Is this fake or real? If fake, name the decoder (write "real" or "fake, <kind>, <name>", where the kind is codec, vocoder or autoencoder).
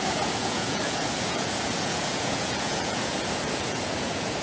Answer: fake, vocoder, Vocos